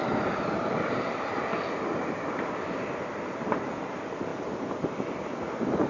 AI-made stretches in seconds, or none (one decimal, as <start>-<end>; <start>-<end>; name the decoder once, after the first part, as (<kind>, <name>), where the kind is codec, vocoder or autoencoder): 0.0-2.4 (vocoder, BigVGAN v2)

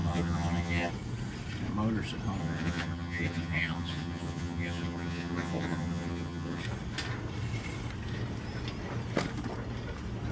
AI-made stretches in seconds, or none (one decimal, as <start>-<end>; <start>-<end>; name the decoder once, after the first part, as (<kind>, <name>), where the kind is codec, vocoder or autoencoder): 0.0-0.9 (vocoder, HiFi-GAN); 2.4-6.6

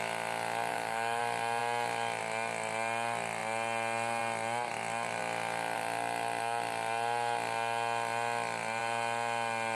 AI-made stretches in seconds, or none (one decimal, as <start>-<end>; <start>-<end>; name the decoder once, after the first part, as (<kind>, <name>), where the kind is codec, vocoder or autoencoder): 0.7-1.2 (autoencoder, DAC-VAE)

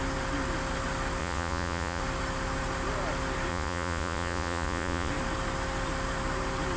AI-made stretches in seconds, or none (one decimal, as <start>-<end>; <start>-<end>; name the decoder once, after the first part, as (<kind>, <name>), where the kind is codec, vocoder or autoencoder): 1.2-2.0 (vocoder, Vocos); 3.5-5.1

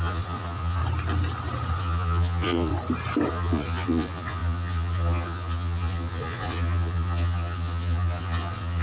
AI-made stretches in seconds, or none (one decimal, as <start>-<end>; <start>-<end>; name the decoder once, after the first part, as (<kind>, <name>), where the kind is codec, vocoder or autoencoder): 0.0-0.8 (vocoder, Vocos); 1.8-2.7; 3.3-8.8

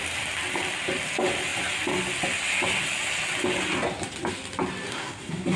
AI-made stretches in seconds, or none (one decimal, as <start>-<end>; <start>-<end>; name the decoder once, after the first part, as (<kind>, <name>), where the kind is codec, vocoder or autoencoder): 4.9-5.6 (codec, SNAC)

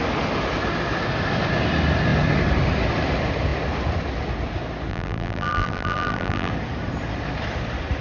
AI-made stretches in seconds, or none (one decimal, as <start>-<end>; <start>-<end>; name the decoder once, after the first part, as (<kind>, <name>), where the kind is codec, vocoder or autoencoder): 4.9-6.5 (vocoder, BigVGAN v2)